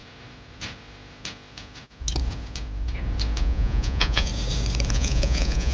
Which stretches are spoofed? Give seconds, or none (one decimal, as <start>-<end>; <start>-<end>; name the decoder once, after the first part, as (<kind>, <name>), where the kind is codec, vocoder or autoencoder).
3.4-4.3 (vocoder, Vocos); 4.9-5.7